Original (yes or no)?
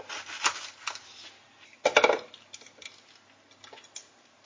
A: yes